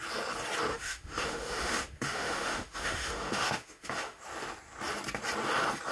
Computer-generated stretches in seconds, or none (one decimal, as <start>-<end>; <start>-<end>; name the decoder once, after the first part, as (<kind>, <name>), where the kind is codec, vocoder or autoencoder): 0.7-4.2 (autoencoder, DAC-VAE)